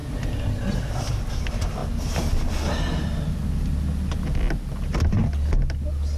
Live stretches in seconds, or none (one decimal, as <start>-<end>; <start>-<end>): 0.0-6.2